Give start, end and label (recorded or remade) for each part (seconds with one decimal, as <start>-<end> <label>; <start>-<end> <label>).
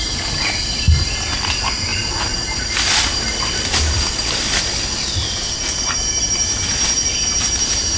0.0-8.0 recorded